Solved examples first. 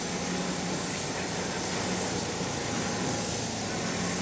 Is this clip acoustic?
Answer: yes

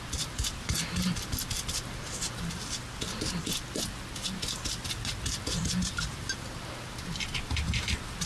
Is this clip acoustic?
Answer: yes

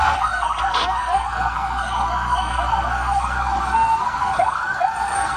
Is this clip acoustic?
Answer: no